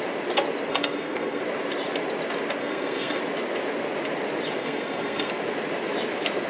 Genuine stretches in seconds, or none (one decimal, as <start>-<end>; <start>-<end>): 0.0-0.7; 1.4-2.6; 3.2-4.6; 5.3-6.5